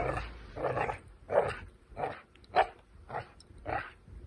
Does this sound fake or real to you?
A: real